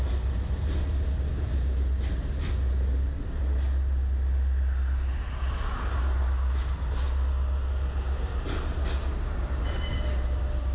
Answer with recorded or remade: recorded